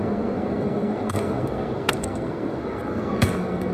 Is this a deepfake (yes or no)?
yes